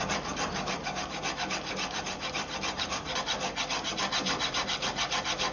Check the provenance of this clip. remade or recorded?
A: remade